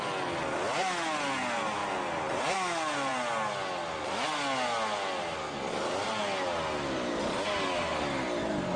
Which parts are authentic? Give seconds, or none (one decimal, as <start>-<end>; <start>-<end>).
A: 0.0-8.8

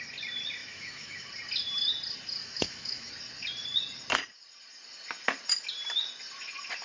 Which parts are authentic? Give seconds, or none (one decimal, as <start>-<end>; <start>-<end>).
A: 0.0-0.6; 1.3-2.4; 3.1-6.8

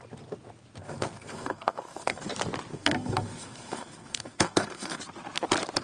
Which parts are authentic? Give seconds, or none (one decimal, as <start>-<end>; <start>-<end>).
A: 0.0-0.8; 2.3-2.7; 5.0-5.8

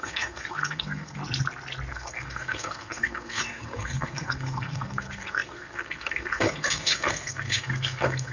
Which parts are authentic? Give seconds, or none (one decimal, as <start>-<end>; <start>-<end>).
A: 1.2-1.9

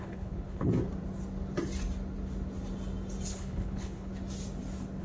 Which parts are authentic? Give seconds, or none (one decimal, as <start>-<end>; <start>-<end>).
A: 0.7-3.3; 4.1-5.0

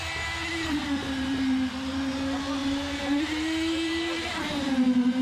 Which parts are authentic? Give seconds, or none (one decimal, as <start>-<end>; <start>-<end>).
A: 0.0-2.6